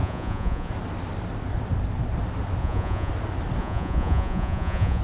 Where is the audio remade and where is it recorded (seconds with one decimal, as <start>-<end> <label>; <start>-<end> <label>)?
0.0-0.7 remade; 0.7-2.6 recorded; 2.6-3.1 remade; 3.1-3.6 recorded; 3.6-5.0 remade